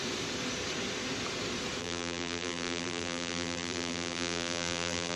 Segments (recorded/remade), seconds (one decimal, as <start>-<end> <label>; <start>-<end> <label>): 0.0-1.8 recorded; 1.8-5.2 remade